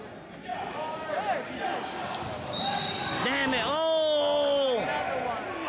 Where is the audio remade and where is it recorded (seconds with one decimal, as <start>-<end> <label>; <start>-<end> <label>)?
0.0-0.5 recorded; 0.5-1.5 remade; 1.5-5.7 recorded

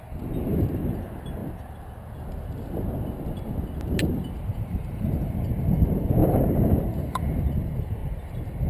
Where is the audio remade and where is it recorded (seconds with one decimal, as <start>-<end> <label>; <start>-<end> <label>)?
0.0-4.5 recorded; 4.5-5.6 remade; 5.6-6.2 recorded; 6.2-7.2 remade; 7.2-8.7 recorded

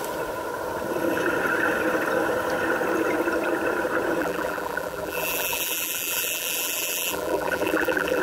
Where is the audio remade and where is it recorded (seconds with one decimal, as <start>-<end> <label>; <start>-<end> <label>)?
0.0-4.2 recorded; 4.2-8.2 remade

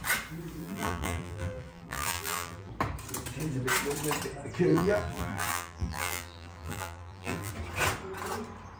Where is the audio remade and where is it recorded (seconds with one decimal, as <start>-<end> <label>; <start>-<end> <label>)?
0.0-0.6 recorded; 0.6-2.7 remade; 2.7-4.7 recorded; 4.7-7.5 remade; 7.5-8.8 recorded